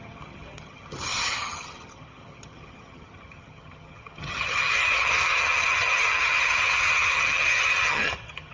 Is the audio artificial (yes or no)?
yes